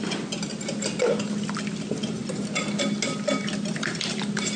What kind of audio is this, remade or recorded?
recorded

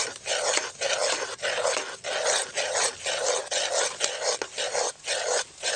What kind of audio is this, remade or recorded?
recorded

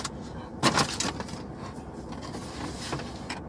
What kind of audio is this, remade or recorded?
recorded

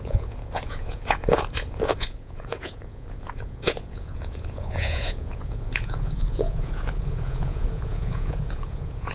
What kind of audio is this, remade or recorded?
remade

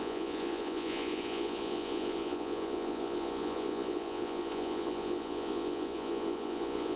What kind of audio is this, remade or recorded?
remade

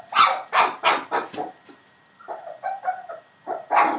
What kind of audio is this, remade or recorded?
recorded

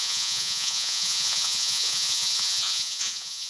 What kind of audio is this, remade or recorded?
remade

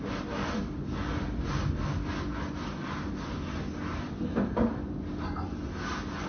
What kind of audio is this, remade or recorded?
recorded